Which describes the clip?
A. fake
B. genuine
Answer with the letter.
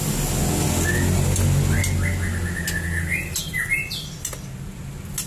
B